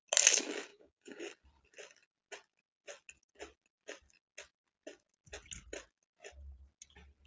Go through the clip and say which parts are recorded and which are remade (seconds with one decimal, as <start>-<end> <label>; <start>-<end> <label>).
0.0-0.7 recorded; 0.7-1.3 remade; 1.3-7.3 recorded